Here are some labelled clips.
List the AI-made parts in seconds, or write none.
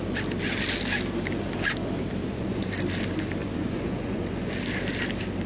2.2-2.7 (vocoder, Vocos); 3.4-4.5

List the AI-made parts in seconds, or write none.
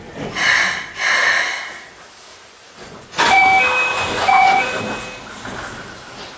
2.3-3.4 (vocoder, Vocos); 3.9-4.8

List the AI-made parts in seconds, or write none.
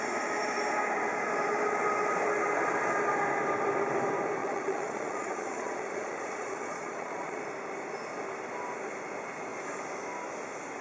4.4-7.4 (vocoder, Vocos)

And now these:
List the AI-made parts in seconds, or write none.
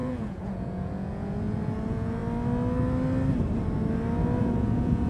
0.0-2.2 (vocoder, Vocos); 4.4-5.1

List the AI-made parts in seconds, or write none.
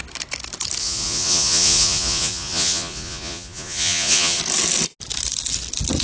0.8-4.4 (vocoder, Vocos)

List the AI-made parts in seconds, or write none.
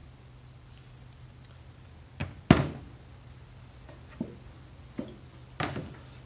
none